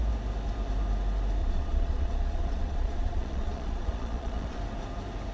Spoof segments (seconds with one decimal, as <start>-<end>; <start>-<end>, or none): 1.4-4.6